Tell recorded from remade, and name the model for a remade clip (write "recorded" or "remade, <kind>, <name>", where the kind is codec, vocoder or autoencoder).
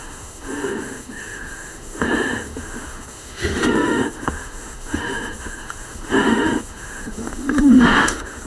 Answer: remade, autoencoder, DAC-VAE